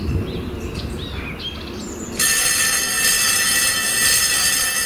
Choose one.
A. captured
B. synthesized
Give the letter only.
A